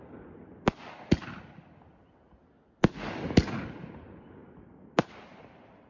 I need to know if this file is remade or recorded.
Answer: recorded